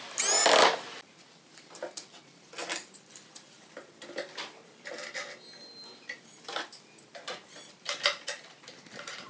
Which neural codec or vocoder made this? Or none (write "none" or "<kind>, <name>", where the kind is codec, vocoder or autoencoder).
vocoder, BigVGAN v2